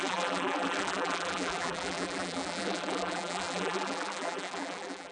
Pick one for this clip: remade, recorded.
remade